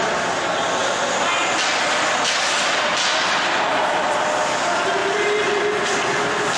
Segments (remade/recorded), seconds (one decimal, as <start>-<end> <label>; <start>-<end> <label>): 0.0-5.0 recorded; 5.0-5.6 remade; 5.6-6.6 recorded